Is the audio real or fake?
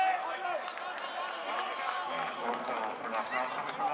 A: real